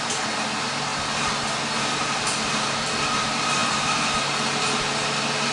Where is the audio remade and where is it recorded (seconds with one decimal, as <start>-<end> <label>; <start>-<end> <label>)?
0.0-5.5 recorded